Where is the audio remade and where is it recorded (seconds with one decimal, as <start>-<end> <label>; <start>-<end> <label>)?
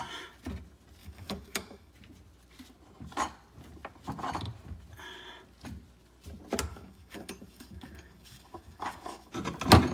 0.0-1.0 recorded; 1.0-1.9 remade; 1.9-6.7 recorded; 6.7-9.3 remade; 9.3-9.9 recorded